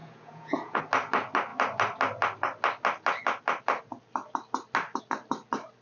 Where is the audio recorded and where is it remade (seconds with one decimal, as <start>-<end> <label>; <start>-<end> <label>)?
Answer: 0.0-0.8 remade; 0.8-5.8 recorded